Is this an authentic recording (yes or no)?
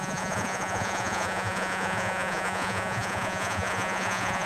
no